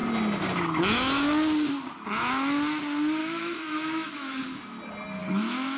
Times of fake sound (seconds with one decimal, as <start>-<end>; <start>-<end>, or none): 3.2-4.4; 5.2-5.8